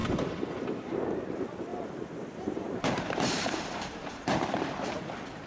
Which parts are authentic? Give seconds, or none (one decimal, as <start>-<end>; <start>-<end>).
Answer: 1.0-1.7; 5.0-5.5